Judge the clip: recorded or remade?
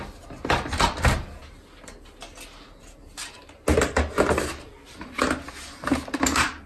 recorded